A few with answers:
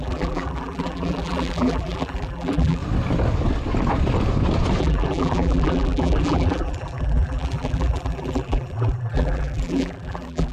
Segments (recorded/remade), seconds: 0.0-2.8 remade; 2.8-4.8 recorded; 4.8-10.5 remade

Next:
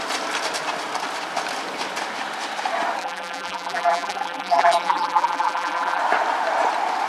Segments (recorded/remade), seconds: 0.0-3.0 recorded; 3.0-6.0 remade; 6.0-7.1 recorded

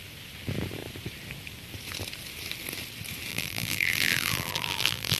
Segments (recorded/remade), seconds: 0.0-3.3 recorded; 3.3-5.2 remade

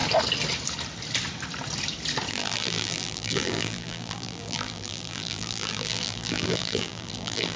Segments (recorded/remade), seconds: 0.0-2.3 recorded; 2.3-7.6 remade

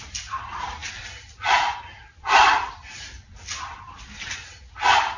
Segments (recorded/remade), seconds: 0.0-0.8 recorded; 0.8-2.5 remade; 2.5-5.2 recorded

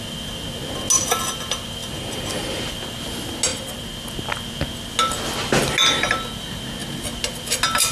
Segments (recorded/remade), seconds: 0.0-1.8 recorded; 1.8-2.7 remade; 2.7-3.5 recorded; 3.5-4.1 remade; 4.1-7.9 recorded